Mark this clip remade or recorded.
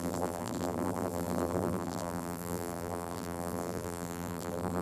remade